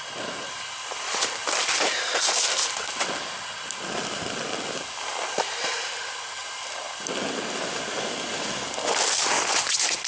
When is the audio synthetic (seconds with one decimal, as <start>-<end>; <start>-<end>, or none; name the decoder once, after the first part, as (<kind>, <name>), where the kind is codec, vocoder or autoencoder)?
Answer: none